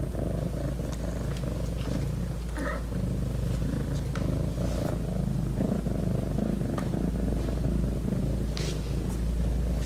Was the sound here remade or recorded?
recorded